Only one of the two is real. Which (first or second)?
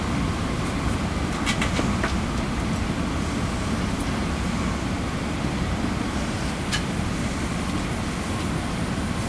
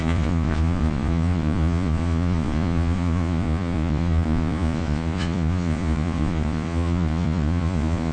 first